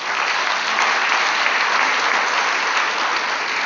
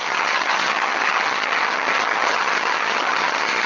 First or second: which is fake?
second